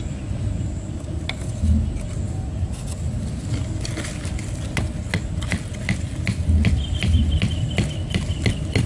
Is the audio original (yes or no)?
yes